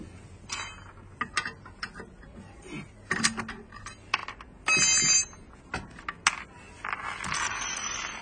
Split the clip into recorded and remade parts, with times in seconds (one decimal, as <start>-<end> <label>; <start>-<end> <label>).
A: 0.0-8.2 recorded